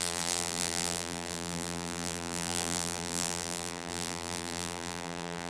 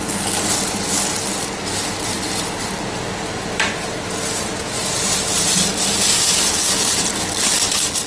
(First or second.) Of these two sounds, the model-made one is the first